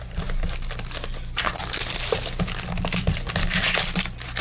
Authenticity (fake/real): real